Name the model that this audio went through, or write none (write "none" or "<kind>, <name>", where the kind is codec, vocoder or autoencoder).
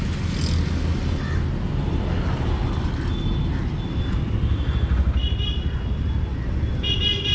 none